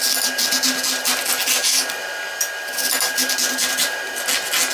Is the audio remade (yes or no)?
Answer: no